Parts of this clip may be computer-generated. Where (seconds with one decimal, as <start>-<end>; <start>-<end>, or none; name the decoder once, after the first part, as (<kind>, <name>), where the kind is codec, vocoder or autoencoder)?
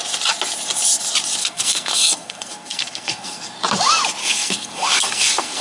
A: 1.4-3.5 (codec, SNAC); 4.2-5.6